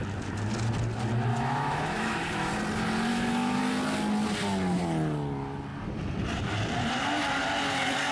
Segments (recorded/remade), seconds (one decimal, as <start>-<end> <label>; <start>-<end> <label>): 0.0-1.3 recorded; 1.3-2.5 remade; 2.5-3.1 recorded; 3.1-3.6 remade; 3.6-8.1 recorded